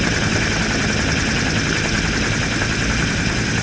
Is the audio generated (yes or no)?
no